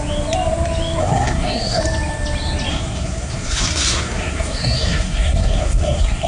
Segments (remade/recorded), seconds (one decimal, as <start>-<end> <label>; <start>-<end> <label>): 0.0-1.0 recorded; 1.0-1.8 remade; 1.8-2.7 recorded; 2.7-6.3 remade